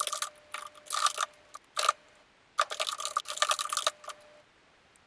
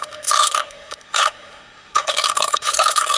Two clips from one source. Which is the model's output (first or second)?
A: second